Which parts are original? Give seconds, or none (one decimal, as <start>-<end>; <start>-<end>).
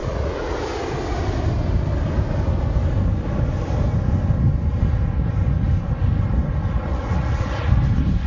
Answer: 0.6-6.9; 7.7-8.3